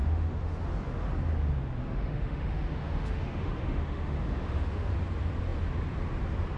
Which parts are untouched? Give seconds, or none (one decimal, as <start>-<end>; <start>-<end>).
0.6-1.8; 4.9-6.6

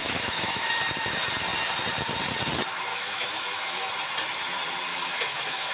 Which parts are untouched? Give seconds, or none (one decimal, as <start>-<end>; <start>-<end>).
0.7-2.9; 3.9-4.9

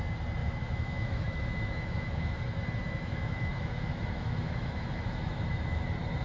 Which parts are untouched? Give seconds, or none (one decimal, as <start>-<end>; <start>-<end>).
0.0-0.4; 2.4-2.8; 5.8-6.2

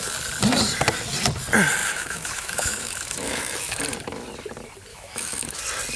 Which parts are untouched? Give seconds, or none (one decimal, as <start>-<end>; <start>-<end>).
0.0-1.8; 3.8-4.9; 5.6-6.0

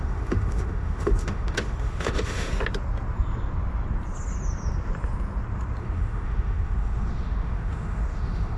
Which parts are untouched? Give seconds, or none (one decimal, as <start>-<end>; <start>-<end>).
2.5-5.8

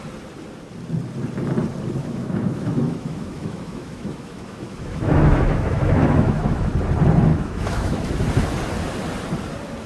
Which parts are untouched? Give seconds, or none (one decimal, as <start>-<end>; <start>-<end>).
0.0-2.0; 6.7-7.3; 8.1-9.9

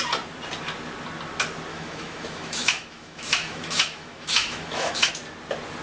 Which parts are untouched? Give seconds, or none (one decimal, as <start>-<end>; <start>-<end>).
0.0-1.7; 5.1-5.8